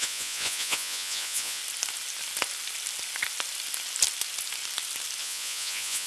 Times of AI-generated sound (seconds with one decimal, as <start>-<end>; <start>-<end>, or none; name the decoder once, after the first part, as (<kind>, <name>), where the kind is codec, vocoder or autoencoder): 0.0-1.6 (vocoder, Vocos); 5.2-6.1